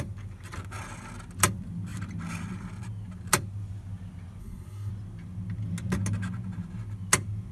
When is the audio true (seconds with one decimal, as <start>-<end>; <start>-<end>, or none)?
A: 0.0-4.4; 4.9-7.5